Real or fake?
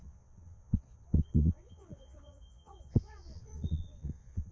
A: fake